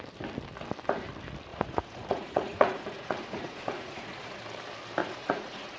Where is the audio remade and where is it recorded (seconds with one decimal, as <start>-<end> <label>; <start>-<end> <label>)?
0.0-1.5 recorded; 1.5-4.4 remade; 4.4-5.0 recorded; 5.0-5.8 remade